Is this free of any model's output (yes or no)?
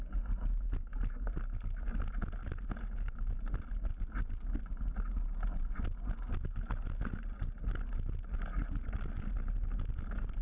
yes